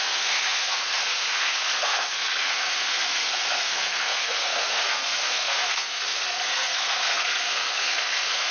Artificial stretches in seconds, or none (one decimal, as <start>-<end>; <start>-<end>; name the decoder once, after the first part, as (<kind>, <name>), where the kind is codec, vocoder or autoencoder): 0.0-8.5 (codec, SNAC)